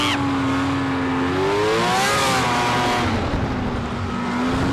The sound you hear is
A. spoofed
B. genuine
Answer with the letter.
B